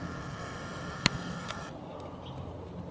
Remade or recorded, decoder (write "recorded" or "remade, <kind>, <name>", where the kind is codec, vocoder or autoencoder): recorded